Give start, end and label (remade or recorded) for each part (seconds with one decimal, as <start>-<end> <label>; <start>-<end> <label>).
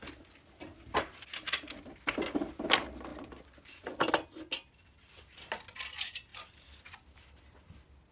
0.0-8.1 recorded